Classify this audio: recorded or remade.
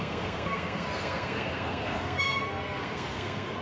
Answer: remade